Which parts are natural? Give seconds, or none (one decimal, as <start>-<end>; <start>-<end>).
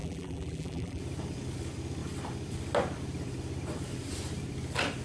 1.0-5.0